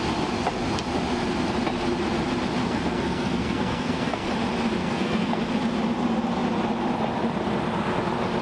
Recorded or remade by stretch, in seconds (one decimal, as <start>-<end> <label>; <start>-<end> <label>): 0.0-2.6 recorded; 2.6-4.3 remade; 4.3-4.8 recorded; 4.8-5.4 remade; 5.4-8.4 recorded